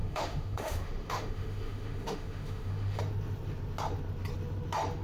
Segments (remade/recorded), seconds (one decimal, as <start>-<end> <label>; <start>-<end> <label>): 0.0-3.0 remade; 3.0-5.0 recorded